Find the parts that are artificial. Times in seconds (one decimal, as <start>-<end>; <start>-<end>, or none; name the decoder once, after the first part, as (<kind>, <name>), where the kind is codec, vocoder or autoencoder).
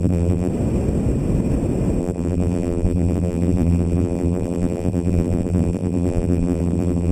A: 0.0-0.5 (vocoder, BigVGAN v2); 2.0-7.1